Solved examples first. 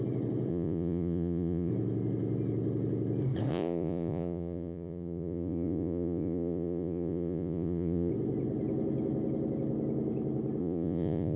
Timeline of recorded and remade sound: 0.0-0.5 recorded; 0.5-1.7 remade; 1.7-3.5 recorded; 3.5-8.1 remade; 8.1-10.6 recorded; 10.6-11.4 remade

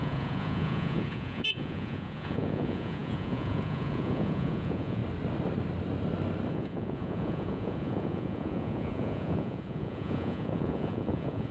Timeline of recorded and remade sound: 0.0-5.0 remade; 5.0-6.5 recorded; 6.5-11.5 remade

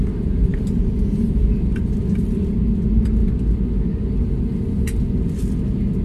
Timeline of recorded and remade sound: 0.0-6.0 recorded

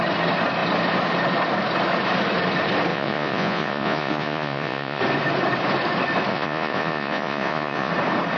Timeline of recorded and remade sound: 0.0-2.9 recorded; 2.9-5.0 remade; 5.0-6.3 recorded; 6.3-7.9 remade; 7.9-8.4 recorded

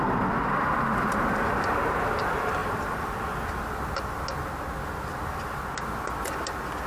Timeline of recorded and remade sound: 0.0-6.9 recorded

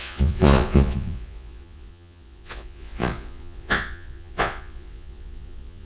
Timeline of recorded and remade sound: 0.0-5.8 remade